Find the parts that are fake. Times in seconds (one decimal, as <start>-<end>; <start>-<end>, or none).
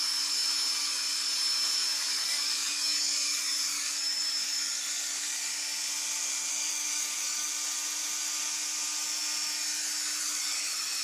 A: 0.0-5.5; 6.5-7.5; 10.2-11.0